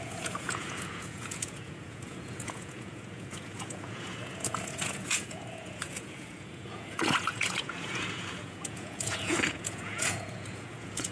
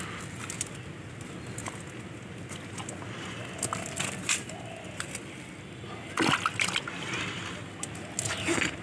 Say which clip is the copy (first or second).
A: first